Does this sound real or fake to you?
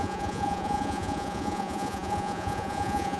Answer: fake